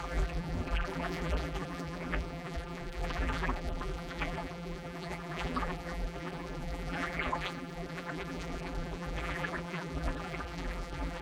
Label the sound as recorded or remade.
remade